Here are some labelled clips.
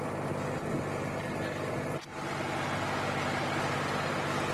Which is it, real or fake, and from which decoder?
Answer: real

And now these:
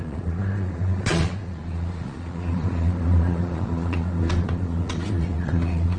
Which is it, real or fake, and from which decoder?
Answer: fake, vocoder, Vocos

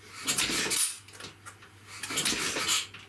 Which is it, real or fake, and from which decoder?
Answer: real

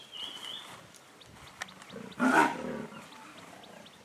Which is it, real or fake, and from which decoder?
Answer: real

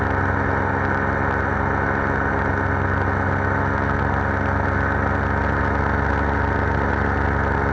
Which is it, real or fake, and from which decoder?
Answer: real